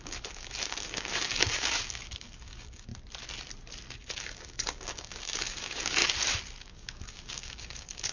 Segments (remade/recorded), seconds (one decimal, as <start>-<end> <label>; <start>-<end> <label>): 0.0-2.9 remade; 2.9-3.9 recorded; 3.9-6.0 remade; 6.0-6.6 recorded; 6.6-8.1 remade

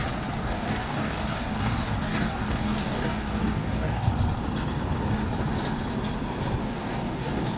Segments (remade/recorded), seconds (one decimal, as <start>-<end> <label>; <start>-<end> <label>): 0.0-0.4 recorded; 0.4-4.1 remade; 4.1-6.6 recorded; 6.6-7.6 remade

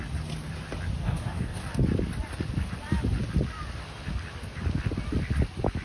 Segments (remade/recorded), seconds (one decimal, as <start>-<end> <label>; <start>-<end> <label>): 0.0-1.0 recorded; 1.0-1.6 remade; 1.6-5.8 recorded

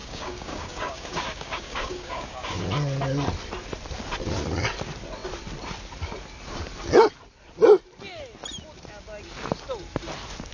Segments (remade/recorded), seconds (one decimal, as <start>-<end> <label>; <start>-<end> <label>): 0.0-2.6 remade; 2.6-10.5 recorded

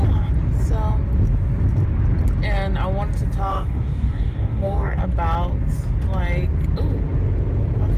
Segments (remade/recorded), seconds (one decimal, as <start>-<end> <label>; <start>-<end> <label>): 0.0-3.5 recorded; 3.5-5.0 remade; 5.0-8.0 recorded

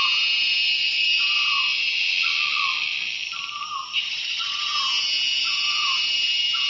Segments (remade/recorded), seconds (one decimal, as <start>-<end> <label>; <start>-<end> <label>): 0.0-0.7 recorded; 0.7-1.2 remade; 1.2-6.7 recorded

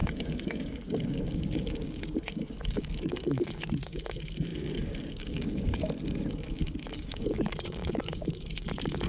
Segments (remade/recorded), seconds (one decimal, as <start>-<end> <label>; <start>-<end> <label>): 0.0-5.8 remade; 5.8-6.3 recorded; 6.3-9.1 remade

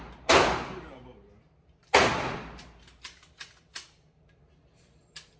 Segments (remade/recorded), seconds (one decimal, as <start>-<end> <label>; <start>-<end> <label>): 0.0-5.4 recorded